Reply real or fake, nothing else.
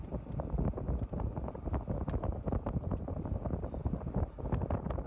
real